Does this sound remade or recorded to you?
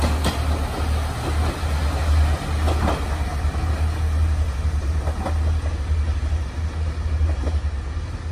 recorded